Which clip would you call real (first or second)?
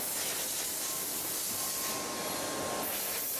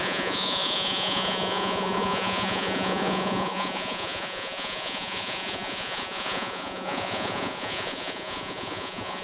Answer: first